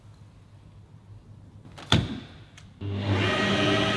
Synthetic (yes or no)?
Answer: no